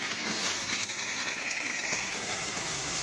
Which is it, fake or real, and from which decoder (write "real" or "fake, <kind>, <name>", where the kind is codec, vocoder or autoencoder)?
fake, codec, SNAC